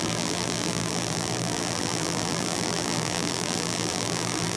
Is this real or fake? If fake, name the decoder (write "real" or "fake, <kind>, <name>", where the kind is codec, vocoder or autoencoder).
fake, vocoder, BigVGAN v2